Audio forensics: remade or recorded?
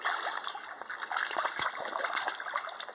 recorded